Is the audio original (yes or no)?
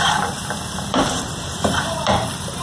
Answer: no